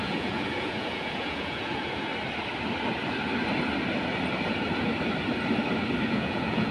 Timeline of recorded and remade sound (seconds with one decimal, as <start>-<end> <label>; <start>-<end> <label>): 0.0-2.1 remade; 2.1-6.1 recorded; 6.1-6.7 remade